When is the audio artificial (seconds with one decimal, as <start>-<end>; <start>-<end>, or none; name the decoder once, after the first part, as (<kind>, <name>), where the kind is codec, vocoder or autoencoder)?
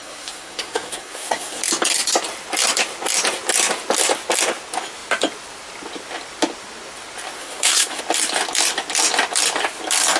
0.0-1.6 (codec, SNAC); 7.4-8.0